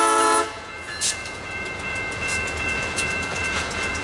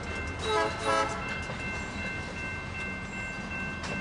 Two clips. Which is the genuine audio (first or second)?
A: second